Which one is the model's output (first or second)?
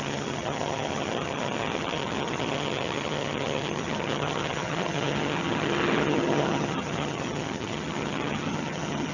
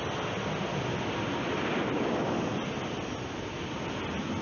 first